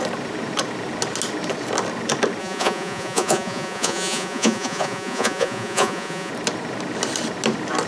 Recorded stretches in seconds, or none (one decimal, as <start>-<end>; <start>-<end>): 0.0-2.4; 6.3-7.9